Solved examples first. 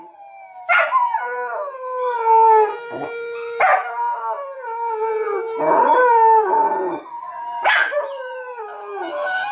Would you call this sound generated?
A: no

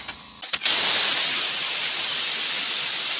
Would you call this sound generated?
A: no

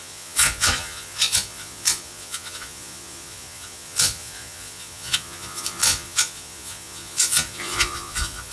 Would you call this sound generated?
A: yes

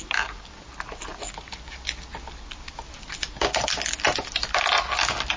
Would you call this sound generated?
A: no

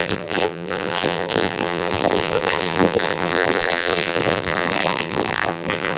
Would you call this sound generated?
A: yes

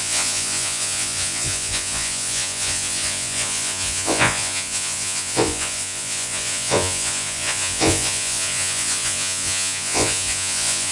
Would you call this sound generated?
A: yes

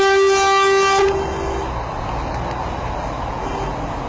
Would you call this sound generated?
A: no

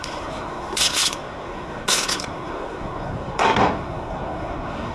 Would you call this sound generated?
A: yes